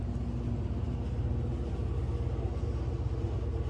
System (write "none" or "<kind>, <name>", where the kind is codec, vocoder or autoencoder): none